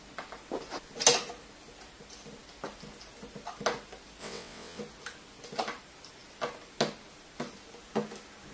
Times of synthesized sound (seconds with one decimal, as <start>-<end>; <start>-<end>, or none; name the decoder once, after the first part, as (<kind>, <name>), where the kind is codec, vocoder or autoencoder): 4.2-4.8 (vocoder, WaveNeXt)